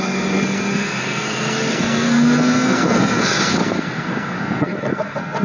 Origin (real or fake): fake